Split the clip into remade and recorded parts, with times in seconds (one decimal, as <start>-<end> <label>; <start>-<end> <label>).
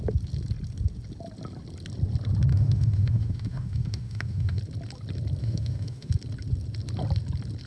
0.0-2.5 recorded; 2.5-4.6 remade; 4.6-5.4 recorded; 5.4-6.1 remade; 6.1-7.7 recorded